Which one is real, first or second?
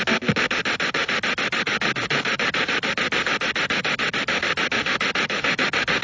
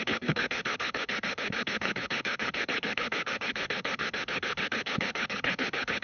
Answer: first